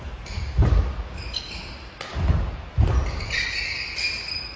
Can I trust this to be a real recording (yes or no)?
yes